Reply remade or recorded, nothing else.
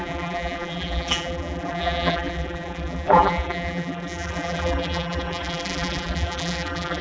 remade